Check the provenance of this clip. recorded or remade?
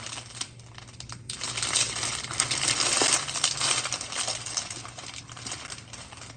recorded